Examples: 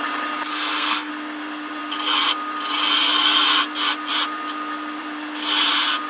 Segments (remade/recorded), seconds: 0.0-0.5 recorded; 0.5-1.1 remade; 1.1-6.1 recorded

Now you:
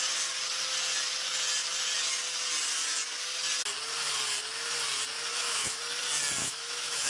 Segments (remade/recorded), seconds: 0.0-5.3 recorded; 5.3-5.8 remade; 5.8-6.4 recorded; 6.4-7.1 remade

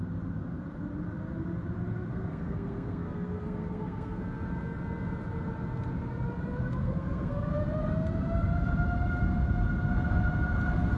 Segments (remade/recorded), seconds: 0.0-2.1 recorded; 2.1-4.2 remade; 4.2-6.8 recorded; 6.8-7.5 remade; 7.5-11.0 recorded